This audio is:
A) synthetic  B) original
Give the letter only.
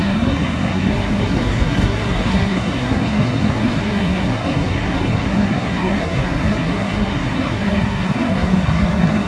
A